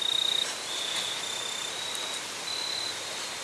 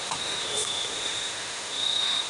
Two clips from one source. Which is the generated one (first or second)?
second